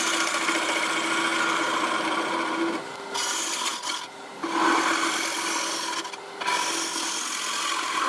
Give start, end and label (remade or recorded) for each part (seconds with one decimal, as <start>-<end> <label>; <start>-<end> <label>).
0.0-8.1 recorded